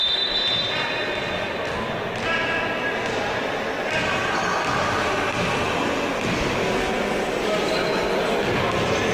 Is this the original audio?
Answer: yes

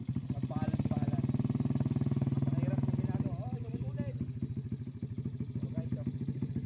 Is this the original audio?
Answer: yes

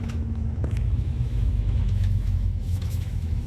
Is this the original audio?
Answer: no